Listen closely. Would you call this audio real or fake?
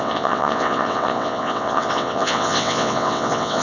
fake